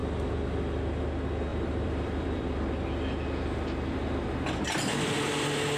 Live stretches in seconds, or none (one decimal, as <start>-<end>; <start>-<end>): 0.0-1.5; 2.7-5.8